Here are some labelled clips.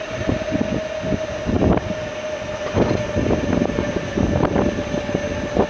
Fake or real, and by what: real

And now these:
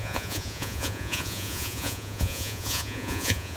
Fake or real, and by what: fake, vocoder, Vocos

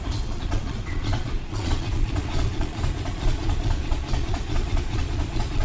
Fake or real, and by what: fake, vocoder, Vocos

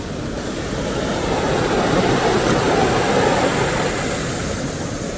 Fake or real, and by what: real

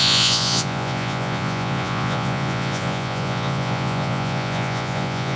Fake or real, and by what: fake, vocoder, Vocos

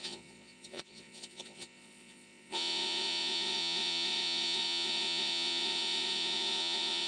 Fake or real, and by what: fake, vocoder, Vocos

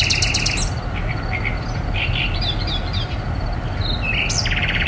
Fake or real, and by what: real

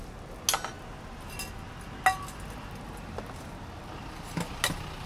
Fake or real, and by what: real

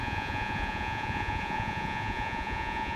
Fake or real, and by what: fake, vocoder, Vocos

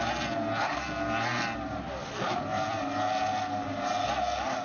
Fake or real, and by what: real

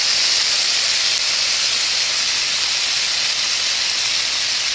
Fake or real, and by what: real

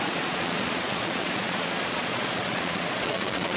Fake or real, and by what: fake, vocoder, Vocos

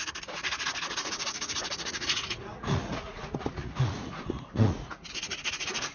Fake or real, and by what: fake, vocoder, Vocos